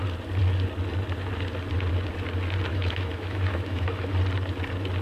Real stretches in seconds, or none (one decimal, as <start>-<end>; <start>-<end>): 0.0-2.7; 4.1-5.0